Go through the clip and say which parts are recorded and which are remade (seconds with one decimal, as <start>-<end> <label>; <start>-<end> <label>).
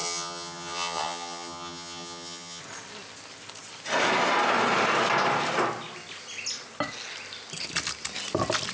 0.0-2.6 remade; 2.6-8.7 recorded